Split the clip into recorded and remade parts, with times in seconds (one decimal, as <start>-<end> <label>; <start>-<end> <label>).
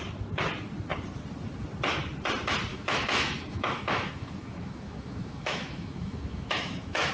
0.0-2.7 recorded; 2.7-7.1 remade